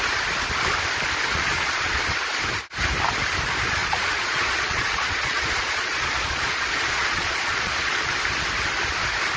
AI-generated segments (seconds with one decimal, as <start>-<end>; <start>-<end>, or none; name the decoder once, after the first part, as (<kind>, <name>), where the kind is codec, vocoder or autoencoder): 1.3-2.0 (vocoder, Vocos); 3.8-8.1